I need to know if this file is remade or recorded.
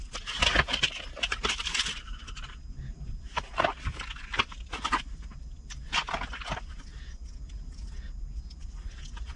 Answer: recorded